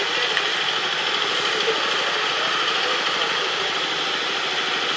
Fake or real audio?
real